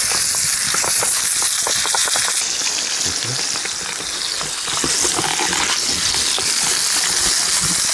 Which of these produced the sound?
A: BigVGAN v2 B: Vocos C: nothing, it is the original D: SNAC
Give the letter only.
C